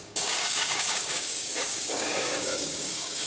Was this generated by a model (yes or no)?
yes